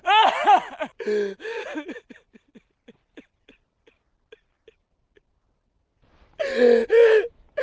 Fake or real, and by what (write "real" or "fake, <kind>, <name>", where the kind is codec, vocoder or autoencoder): real